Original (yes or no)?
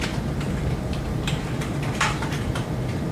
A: no